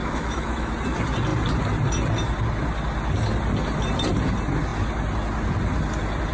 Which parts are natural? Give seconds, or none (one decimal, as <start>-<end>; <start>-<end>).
0.7-6.3